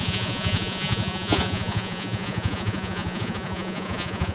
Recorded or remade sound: remade